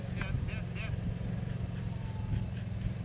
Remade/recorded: recorded